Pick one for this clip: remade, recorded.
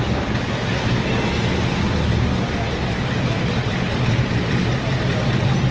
recorded